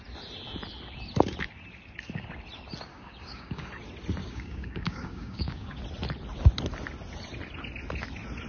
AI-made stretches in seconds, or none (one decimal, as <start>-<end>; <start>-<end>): 2.9-3.7; 4.2-5.8